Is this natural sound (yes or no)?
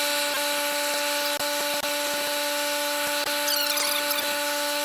yes